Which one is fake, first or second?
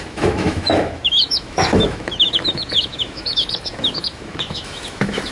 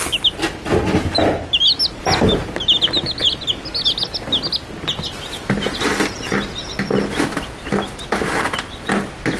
first